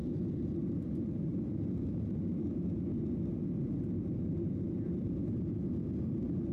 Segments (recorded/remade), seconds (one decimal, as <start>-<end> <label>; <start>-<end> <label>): 0.0-6.5 recorded